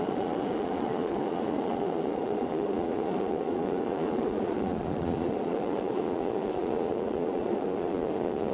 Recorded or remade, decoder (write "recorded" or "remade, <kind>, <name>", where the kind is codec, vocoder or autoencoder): remade, vocoder, Vocos